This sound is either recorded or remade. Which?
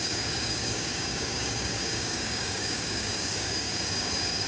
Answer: remade